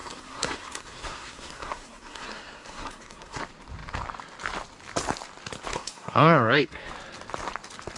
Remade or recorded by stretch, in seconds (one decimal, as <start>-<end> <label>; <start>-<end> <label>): 0.0-3.4 remade; 3.4-5.7 recorded; 5.7-6.9 remade; 6.9-8.0 recorded